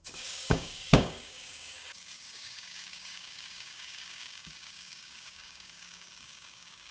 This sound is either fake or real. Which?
fake